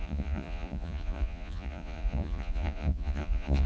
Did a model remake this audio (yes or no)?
yes